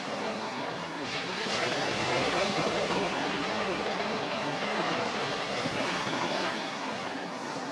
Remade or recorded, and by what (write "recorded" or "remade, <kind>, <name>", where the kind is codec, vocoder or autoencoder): remade, codec, SNAC